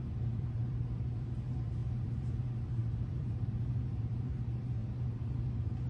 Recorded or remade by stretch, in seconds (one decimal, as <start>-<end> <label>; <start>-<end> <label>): 0.0-5.9 remade